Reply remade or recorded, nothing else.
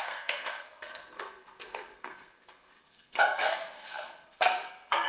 remade